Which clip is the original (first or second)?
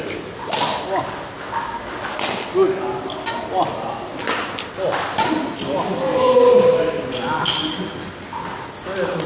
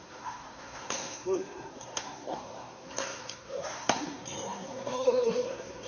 first